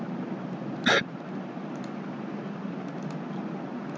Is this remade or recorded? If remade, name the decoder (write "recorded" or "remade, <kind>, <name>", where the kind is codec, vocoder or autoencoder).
recorded